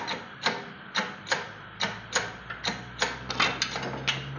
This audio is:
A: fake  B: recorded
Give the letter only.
B